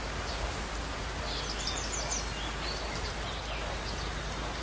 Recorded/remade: recorded